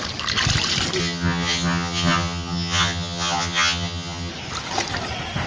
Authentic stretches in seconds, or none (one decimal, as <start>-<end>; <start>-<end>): 0.0-1.0; 4.3-5.5